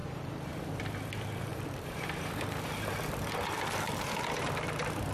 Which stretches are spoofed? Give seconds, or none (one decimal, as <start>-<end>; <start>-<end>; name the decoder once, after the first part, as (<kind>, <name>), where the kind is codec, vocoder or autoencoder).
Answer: 0.0-0.8 (vocoder, BigVGAN v2); 1.5-3.0